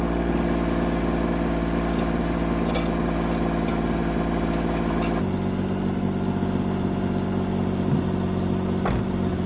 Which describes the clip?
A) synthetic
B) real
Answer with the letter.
B